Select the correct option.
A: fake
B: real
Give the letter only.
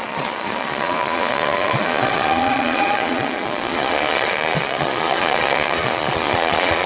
A